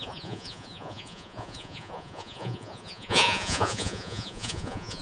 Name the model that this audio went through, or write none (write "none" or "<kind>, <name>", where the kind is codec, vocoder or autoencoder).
vocoder, Vocos